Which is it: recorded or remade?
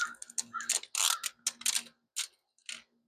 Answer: recorded